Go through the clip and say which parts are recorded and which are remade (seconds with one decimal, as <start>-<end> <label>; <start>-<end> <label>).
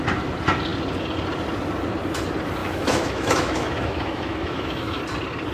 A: 0.0-2.6 recorded; 2.6-5.0 remade; 5.0-5.5 recorded